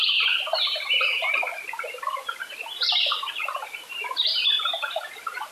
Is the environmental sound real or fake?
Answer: fake